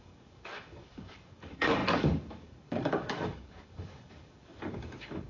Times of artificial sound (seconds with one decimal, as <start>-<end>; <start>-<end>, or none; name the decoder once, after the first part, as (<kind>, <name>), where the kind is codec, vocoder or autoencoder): 0.0-5.3 (codec, DAC)